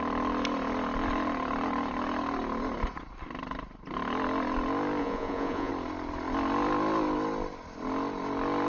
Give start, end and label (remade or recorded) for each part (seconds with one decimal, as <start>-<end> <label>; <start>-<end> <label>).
0.0-5.0 recorded; 5.0-5.7 remade; 5.7-8.7 recorded